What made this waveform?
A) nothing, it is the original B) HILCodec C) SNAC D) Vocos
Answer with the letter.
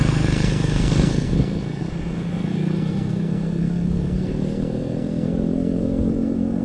C